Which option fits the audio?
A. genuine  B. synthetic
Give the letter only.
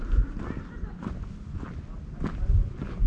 A